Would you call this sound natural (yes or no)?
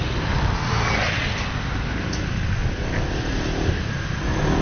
yes